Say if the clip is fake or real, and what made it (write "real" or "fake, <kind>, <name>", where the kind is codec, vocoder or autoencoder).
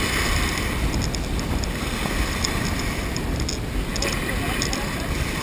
real